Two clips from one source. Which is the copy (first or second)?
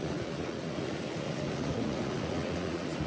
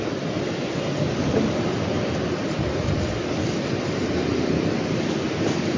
first